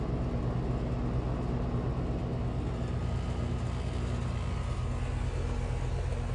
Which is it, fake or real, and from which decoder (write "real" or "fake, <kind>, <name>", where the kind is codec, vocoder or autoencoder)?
real